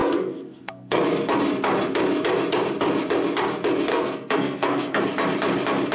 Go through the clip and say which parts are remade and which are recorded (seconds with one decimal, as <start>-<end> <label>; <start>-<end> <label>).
0.0-1.0 remade; 1.0-3.9 recorded; 3.9-5.0 remade; 5.0-5.9 recorded